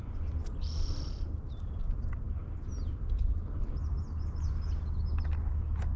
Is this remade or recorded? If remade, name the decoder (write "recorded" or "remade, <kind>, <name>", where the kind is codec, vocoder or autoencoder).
recorded